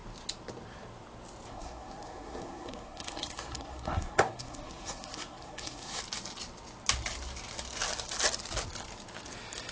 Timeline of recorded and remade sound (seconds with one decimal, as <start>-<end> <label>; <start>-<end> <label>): 0.0-1.5 recorded; 1.5-6.0 remade; 6.0-9.7 recorded